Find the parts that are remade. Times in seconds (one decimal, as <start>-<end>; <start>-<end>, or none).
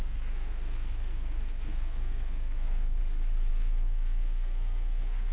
0.0-3.0; 3.5-5.3